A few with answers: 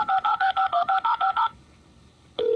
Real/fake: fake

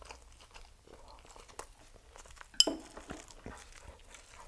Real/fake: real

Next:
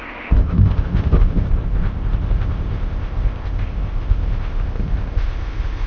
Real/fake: fake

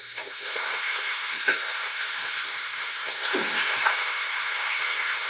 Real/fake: fake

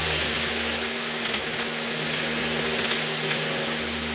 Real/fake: real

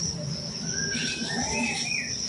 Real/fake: real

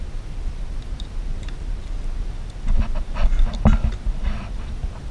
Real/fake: real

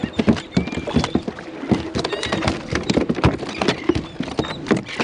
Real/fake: real